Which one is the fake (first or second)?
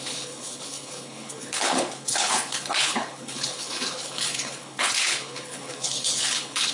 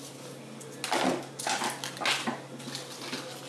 first